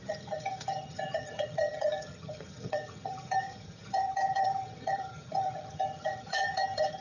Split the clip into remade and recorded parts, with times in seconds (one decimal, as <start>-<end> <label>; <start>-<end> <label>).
0.0-7.0 remade